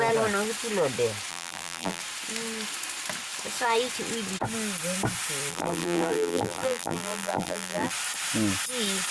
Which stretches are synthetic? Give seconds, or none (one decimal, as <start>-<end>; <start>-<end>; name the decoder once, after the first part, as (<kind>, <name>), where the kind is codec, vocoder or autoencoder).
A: 1.3-2.0 (vocoder, BigVGAN v2); 5.5-7.9